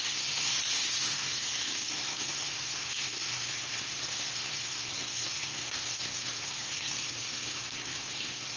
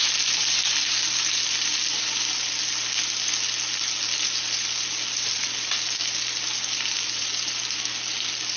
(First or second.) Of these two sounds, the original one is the second